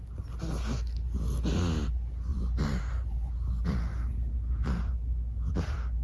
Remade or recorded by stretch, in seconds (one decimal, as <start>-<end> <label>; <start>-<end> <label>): 0.0-2.3 recorded; 2.3-3.5 remade; 3.5-6.0 recorded